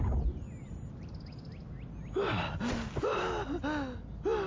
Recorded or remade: recorded